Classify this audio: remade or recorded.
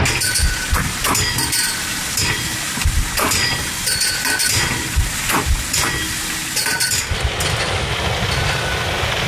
recorded